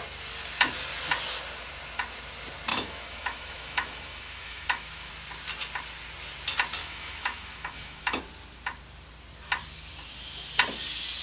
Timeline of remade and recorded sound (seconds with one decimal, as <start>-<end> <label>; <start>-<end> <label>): 0.0-2.7 recorded; 2.7-5.1 remade; 5.1-6.8 recorded; 6.8-8.2 remade; 8.2-11.2 recorded

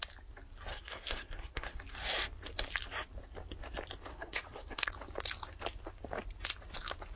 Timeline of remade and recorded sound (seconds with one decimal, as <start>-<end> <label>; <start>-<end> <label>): 0.0-0.7 recorded; 0.7-1.8 remade; 1.8-4.1 recorded; 4.1-4.9 remade; 4.9-7.2 recorded

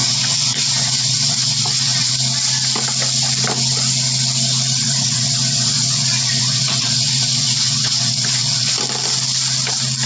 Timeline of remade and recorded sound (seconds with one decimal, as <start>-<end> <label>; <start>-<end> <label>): 0.0-2.1 remade; 2.1-4.8 recorded; 4.8-8.8 remade; 8.8-10.1 recorded